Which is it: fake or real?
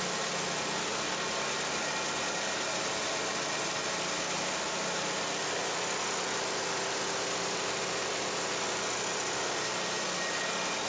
real